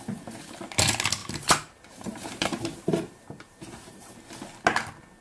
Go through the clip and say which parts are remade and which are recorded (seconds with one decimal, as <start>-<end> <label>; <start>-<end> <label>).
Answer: 0.0-1.2 recorded; 1.2-4.1 remade; 4.1-5.2 recorded